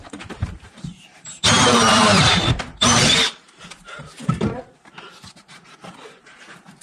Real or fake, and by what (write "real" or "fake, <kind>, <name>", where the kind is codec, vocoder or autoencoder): fake, vocoder, BigVGAN v2